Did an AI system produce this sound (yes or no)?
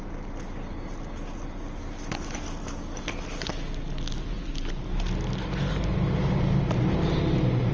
no